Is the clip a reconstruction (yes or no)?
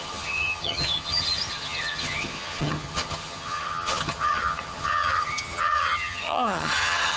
yes